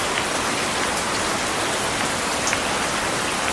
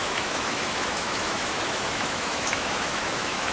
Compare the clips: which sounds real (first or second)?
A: first